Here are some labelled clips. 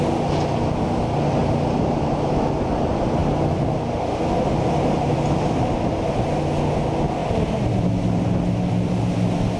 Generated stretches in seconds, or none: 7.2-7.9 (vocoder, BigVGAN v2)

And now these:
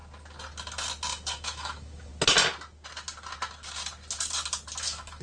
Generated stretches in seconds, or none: 1.3-2.1 (autoencoder, DAC-VAE); 4.8-5.2